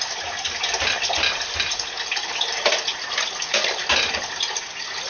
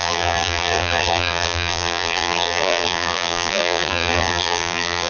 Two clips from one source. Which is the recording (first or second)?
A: first